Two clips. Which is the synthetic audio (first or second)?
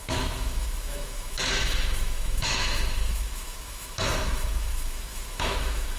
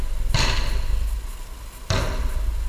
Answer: first